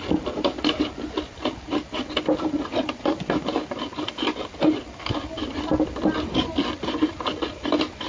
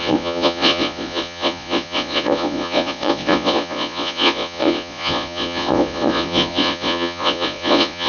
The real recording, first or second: first